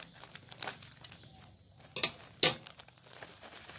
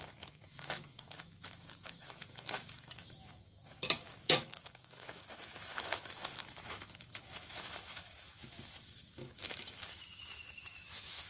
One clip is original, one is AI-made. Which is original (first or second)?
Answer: first